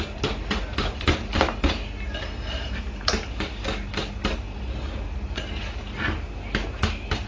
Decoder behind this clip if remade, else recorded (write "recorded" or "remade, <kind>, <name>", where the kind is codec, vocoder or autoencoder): recorded